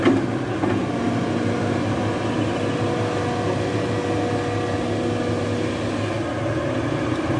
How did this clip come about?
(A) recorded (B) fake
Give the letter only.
A